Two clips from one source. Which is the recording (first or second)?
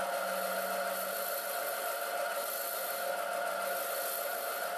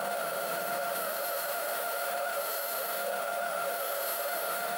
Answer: first